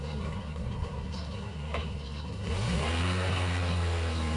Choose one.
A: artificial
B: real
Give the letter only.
A